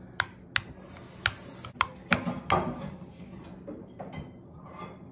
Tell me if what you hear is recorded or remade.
recorded